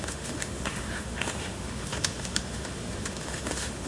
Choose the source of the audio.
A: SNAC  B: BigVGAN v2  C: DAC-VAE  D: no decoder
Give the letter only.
C